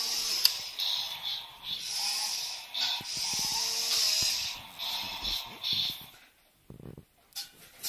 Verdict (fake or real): real